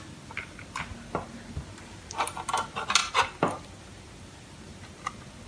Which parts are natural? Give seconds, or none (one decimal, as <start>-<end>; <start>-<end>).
0.0-3.0; 3.6-5.5